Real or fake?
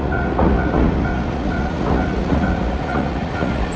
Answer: fake